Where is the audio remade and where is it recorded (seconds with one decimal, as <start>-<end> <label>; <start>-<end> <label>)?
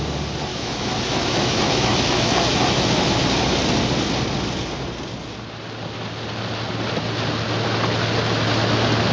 0.0-0.5 recorded; 0.5-3.2 remade; 3.2-9.1 recorded